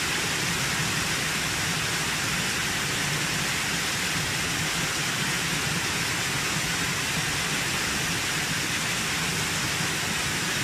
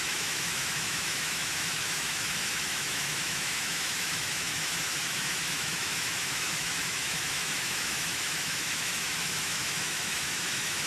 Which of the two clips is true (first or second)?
first